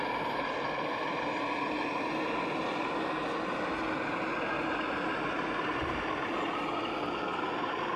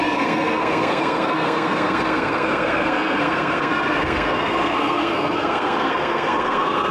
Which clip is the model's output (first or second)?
second